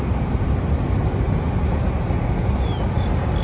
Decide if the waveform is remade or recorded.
recorded